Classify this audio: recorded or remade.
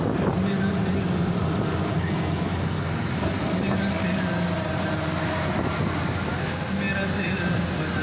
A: recorded